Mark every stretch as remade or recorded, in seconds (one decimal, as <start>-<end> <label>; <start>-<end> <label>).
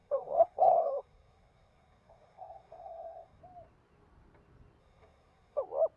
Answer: 0.0-3.4 remade; 3.4-4.8 recorded; 4.8-5.6 remade; 5.6-6.0 recorded